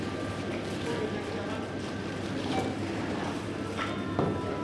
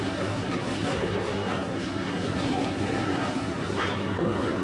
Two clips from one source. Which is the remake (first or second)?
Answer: second